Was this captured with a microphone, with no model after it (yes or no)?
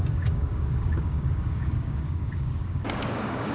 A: no